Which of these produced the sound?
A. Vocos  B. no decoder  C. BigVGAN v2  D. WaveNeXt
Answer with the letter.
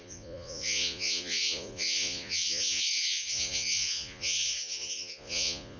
A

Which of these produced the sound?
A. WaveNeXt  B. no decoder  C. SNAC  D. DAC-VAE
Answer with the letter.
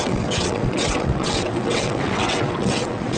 A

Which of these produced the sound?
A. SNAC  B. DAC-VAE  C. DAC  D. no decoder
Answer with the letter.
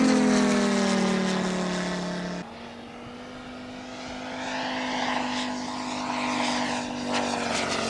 D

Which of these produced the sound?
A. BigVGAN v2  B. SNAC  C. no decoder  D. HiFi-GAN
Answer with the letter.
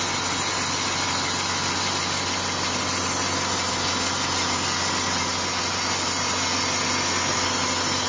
C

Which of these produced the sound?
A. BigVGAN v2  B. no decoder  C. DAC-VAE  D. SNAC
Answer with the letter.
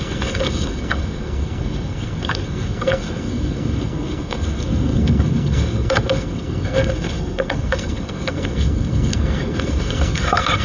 D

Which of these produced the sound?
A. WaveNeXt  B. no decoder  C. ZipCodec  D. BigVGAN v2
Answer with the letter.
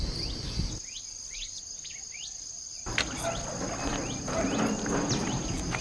B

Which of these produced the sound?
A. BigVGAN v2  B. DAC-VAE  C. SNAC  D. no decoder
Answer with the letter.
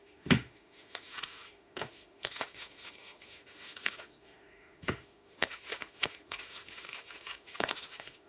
B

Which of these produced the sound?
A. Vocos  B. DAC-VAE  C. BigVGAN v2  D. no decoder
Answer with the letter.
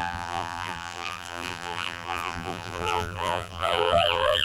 C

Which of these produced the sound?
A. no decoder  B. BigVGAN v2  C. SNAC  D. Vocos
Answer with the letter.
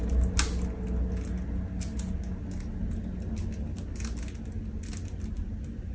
A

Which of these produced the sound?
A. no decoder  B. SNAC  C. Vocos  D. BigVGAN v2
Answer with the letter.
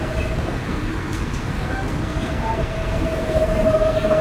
B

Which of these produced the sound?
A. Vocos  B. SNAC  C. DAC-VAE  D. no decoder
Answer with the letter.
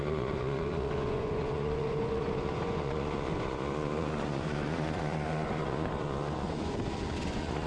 A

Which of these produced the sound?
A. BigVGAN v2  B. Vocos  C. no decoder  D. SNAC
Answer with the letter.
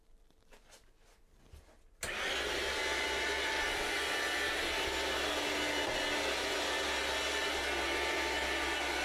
C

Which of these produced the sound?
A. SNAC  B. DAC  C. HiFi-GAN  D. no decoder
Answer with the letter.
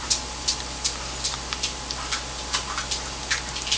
D